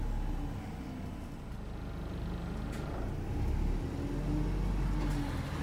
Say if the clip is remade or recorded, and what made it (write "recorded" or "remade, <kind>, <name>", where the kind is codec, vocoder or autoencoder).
recorded